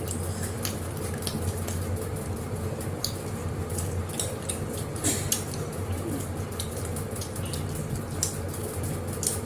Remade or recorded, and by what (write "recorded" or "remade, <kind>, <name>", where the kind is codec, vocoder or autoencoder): recorded